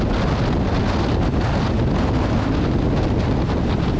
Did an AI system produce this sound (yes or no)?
no